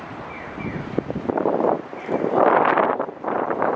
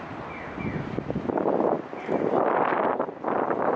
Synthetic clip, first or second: first